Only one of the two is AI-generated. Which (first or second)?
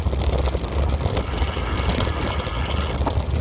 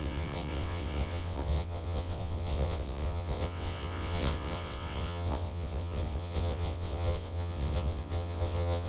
second